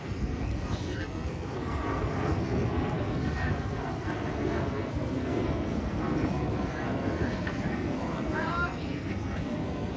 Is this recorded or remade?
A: remade